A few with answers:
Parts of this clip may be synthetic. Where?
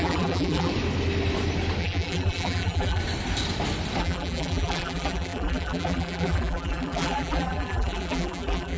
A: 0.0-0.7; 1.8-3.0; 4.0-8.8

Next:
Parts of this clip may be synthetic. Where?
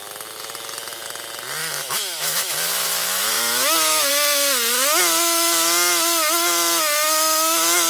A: 1.6-4.1